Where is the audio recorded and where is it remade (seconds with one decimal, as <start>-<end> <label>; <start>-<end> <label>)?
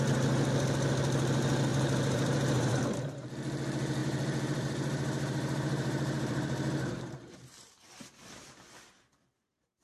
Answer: 0.0-1.7 recorded; 1.7-2.8 remade; 2.8-4.0 recorded; 4.0-7.1 remade; 7.1-9.8 recorded